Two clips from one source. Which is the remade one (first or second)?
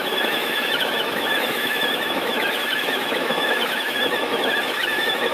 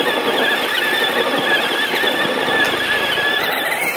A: first